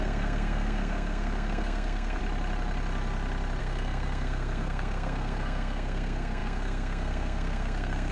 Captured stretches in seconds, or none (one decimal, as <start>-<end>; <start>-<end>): 2.2-3.6